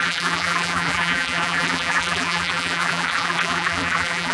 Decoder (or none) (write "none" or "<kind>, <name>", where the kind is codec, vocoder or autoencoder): vocoder, BigVGAN v2